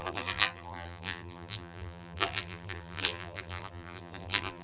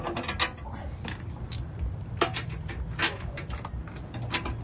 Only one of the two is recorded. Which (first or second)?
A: second